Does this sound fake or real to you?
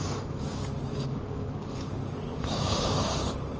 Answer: fake